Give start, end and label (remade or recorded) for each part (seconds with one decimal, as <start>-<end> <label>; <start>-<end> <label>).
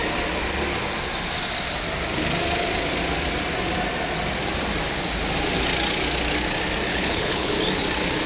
0.0-6.9 recorded; 6.9-7.5 remade; 7.5-8.3 recorded